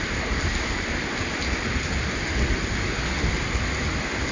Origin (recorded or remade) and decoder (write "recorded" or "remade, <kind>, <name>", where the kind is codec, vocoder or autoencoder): recorded